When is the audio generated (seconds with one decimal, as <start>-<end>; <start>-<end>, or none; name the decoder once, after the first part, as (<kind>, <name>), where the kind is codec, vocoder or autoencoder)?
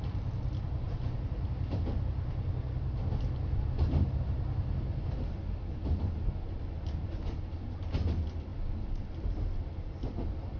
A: none